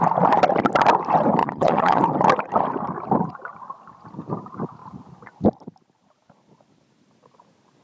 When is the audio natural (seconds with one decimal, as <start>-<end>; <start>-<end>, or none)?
0.0-1.4; 2.0-7.8